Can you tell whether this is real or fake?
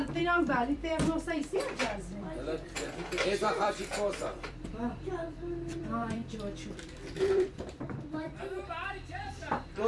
fake